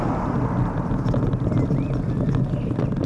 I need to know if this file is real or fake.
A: real